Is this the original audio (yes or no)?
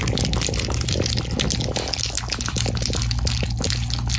yes